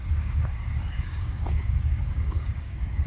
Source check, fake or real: fake